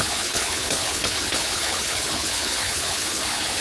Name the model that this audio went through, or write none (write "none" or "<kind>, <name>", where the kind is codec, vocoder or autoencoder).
codec, HILCodec